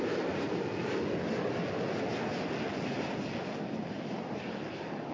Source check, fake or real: real